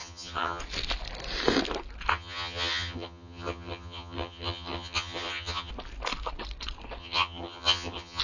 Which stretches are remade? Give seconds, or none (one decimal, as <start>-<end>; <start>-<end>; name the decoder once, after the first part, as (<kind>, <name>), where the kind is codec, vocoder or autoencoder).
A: 0.0-0.6 (vocoder, HiFi-GAN); 2.1-5.7; 7.0-8.2